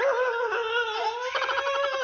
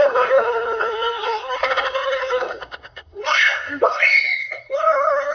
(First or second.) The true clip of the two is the first